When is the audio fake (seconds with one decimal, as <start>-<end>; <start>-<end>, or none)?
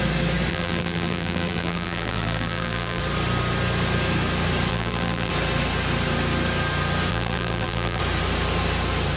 0.5-3.0; 4.7-5.3; 7.1-8.0